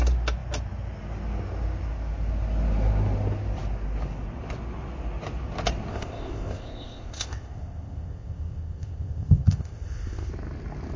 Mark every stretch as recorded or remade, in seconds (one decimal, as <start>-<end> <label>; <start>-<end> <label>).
0.0-5.9 recorded; 5.9-10.3 remade; 10.3-11.0 recorded